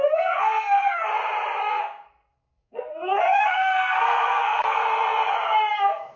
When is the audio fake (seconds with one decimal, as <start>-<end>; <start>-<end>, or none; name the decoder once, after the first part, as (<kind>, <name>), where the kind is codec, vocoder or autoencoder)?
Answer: 0.0-1.1 (codec, SNAC); 1.7-4.8; 5.7-6.2